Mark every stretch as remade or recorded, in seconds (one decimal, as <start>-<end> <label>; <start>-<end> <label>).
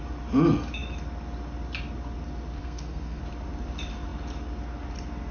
0.0-2.6 recorded; 2.6-3.2 remade; 3.2-5.3 recorded